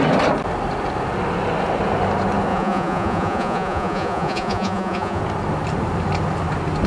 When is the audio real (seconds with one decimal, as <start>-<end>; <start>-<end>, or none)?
0.0-2.5; 5.2-6.9